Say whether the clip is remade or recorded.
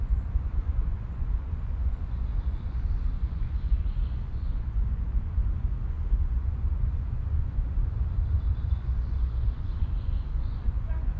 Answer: remade